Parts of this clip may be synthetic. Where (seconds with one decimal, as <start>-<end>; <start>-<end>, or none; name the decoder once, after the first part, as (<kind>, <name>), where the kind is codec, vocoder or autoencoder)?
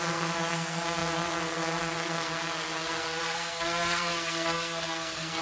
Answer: 0.0-5.4 (codec, SNAC)